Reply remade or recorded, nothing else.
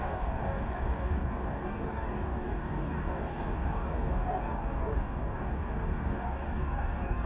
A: remade